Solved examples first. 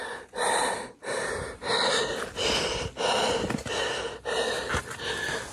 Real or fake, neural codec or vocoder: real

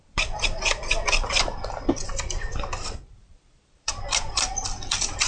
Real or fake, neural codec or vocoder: fake, vocoder, BigVGAN v2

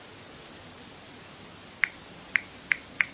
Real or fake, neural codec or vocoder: real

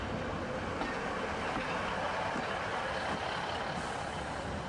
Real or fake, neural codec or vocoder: real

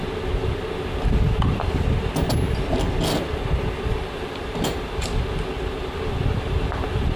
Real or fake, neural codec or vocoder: real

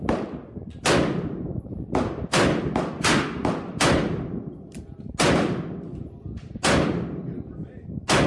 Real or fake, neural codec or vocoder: real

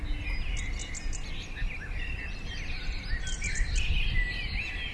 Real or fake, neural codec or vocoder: real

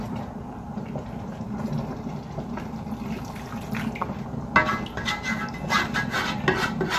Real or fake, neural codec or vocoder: real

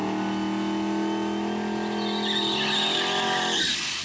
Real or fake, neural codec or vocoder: real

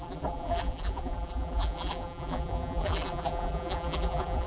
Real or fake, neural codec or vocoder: fake, vocoder, BigVGAN v2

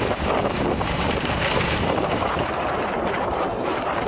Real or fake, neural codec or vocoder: fake, vocoder, BigVGAN v2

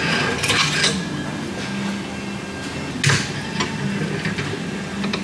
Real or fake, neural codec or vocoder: real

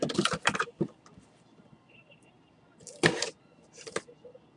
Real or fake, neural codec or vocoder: fake, vocoder, BigVGAN v2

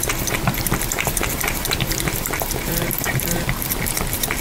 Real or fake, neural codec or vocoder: fake, vocoder, BigVGAN v2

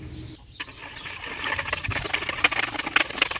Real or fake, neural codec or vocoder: real